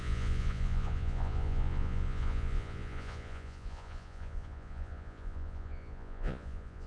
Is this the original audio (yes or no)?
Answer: no